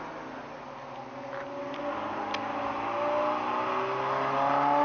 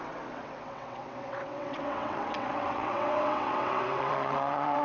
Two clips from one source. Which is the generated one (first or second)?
second